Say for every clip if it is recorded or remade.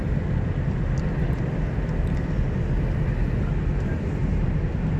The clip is recorded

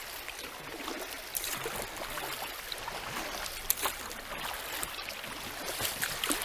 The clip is recorded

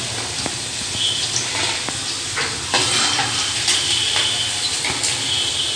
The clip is recorded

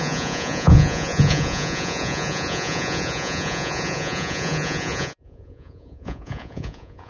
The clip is remade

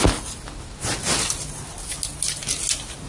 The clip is recorded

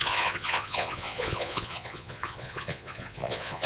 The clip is remade